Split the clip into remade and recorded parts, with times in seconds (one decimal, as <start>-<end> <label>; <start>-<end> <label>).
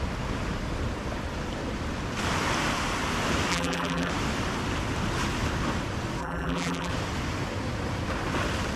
0.0-3.5 recorded; 3.5-4.1 remade; 4.1-6.2 recorded; 6.2-6.9 remade; 6.9-8.8 recorded